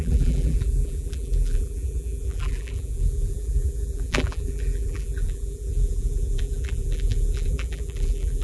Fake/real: fake